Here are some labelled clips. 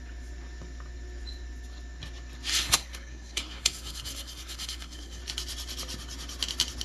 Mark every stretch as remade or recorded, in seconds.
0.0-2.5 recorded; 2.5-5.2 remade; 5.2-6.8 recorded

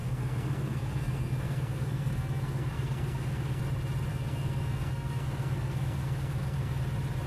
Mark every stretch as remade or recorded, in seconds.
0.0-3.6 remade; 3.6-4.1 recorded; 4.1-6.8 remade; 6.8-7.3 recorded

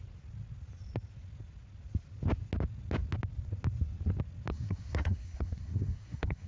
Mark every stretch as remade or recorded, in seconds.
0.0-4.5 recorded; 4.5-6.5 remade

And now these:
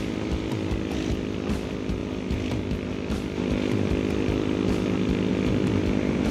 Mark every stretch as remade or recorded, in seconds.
0.0-6.3 recorded